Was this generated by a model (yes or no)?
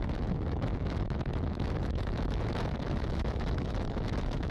yes